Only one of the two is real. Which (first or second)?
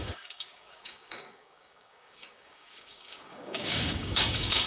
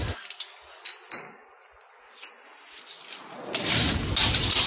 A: second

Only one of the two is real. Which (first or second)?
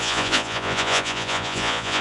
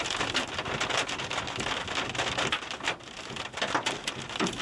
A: second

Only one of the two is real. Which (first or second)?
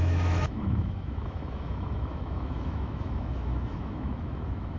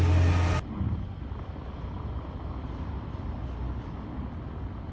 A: second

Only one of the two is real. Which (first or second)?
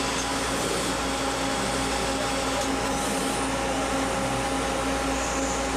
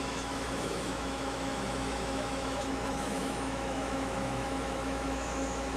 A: first